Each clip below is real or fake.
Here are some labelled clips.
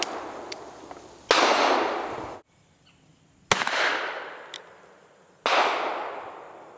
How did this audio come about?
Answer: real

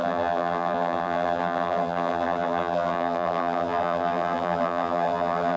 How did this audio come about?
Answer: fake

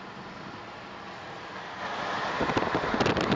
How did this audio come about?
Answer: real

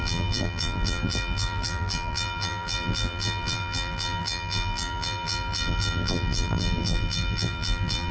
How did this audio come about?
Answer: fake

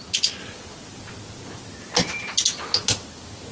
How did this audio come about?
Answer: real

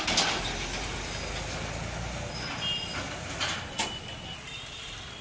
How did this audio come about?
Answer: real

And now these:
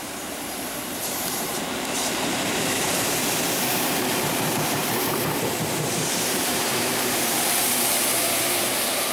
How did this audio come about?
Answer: fake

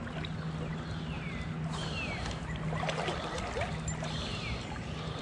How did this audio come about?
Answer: real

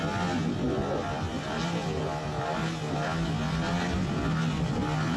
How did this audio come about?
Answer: real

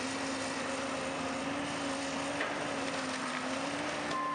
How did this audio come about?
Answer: fake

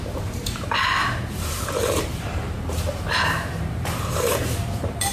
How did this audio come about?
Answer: fake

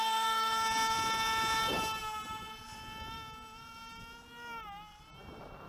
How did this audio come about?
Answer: fake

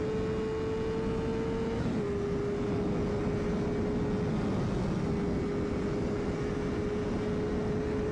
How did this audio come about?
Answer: real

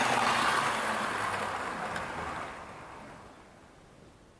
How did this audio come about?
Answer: real